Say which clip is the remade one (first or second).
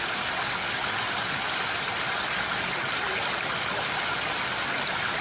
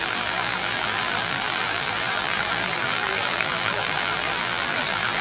second